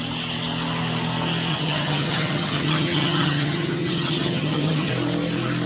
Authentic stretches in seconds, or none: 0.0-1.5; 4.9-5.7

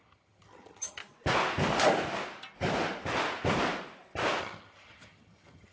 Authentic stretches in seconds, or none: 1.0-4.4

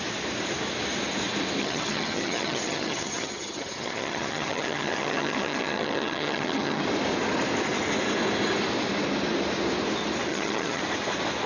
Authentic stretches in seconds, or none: 0.0-1.6; 6.8-10.3; 10.8-11.5

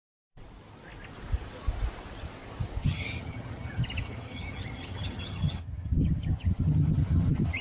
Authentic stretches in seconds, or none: 0.0-2.8

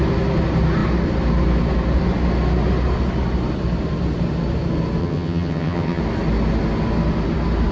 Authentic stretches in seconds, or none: 0.0-5.0; 6.0-7.7